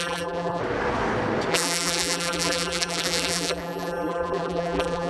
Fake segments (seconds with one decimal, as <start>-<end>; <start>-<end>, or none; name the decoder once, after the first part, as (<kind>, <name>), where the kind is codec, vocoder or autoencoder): 0.0-0.6 (vocoder, BigVGAN v2); 1.5-5.1